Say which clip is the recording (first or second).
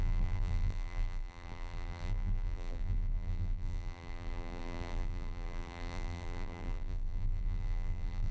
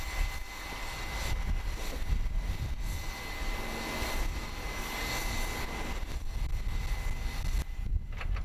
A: second